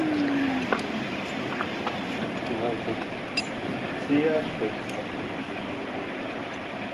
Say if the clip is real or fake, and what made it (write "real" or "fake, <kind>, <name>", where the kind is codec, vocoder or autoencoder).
real